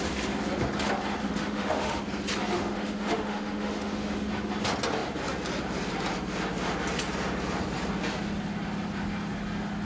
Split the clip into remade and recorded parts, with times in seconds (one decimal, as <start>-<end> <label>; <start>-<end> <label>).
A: 0.0-1.2 recorded; 1.2-2.0 remade; 2.0-2.5 recorded; 2.5-4.3 remade; 4.3-9.8 recorded